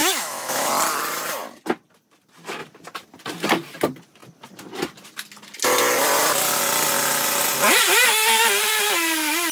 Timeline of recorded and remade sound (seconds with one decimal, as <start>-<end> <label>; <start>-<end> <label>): 0.0-0.7 remade; 0.7-9.5 recorded